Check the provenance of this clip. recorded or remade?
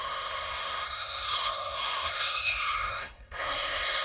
remade